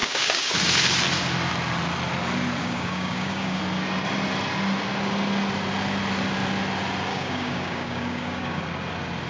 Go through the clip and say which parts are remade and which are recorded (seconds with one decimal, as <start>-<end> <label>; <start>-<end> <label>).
0.0-0.5 remade; 0.5-2.6 recorded; 2.6-3.6 remade; 3.6-7.1 recorded; 7.1-8.6 remade; 8.6-9.3 recorded